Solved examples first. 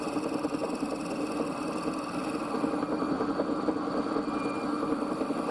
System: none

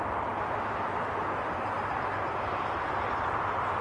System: none